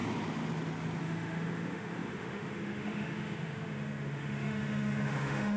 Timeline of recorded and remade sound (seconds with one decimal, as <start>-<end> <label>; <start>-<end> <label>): 0.0-1.0 recorded; 1.0-5.6 remade